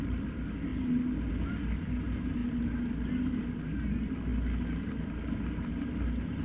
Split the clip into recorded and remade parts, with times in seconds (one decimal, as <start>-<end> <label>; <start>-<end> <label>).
0.0-6.4 recorded